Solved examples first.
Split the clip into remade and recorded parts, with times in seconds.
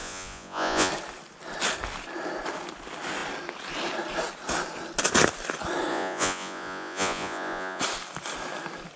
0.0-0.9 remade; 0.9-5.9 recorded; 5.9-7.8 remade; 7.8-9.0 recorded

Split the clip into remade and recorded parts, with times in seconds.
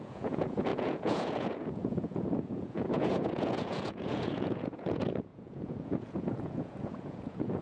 0.0-7.6 remade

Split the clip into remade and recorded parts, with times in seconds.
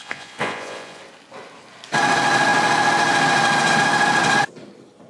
0.0-1.0 remade; 1.0-5.1 recorded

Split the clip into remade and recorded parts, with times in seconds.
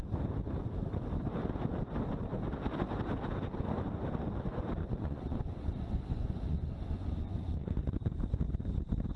0.0-4.8 recorded; 4.8-7.8 remade; 7.8-9.2 recorded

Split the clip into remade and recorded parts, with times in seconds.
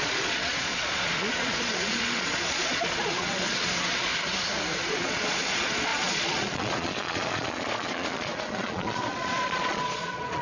0.0-4.1 remade; 4.1-4.8 recorded; 4.8-10.4 remade